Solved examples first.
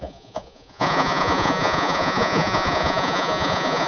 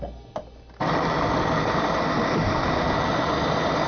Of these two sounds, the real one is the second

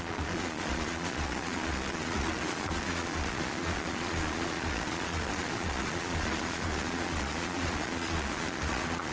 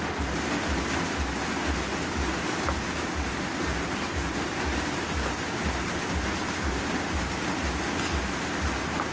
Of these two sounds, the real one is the second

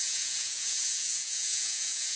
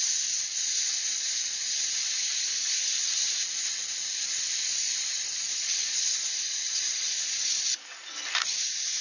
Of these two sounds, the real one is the second